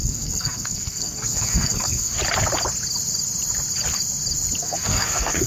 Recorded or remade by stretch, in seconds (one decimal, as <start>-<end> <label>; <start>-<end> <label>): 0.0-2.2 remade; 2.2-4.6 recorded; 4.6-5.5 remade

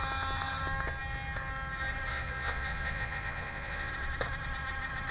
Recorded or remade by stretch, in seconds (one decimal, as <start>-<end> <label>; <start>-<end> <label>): 0.0-2.1 recorded; 2.1-3.9 remade; 3.9-5.1 recorded

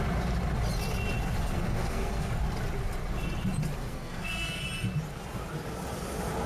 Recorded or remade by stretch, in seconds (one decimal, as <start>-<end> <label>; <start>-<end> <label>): 0.0-1.4 recorded; 1.4-2.3 remade; 2.3-3.8 recorded; 3.8-4.6 remade; 4.6-6.5 recorded

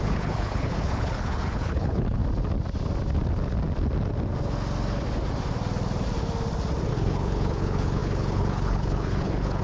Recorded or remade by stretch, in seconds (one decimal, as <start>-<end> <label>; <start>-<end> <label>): 0.0-2.2 remade; 2.2-6.9 recorded; 6.9-9.6 remade